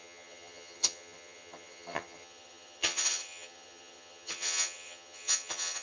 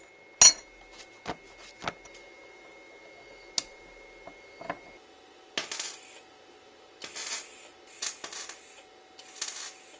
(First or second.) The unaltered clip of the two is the second